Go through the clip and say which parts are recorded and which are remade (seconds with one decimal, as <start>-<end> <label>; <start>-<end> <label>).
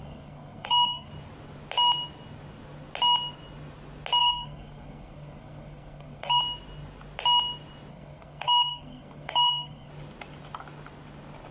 0.0-1.1 remade; 1.1-4.2 recorded; 4.2-6.4 remade; 6.4-7.9 recorded; 7.9-9.9 remade; 9.9-11.5 recorded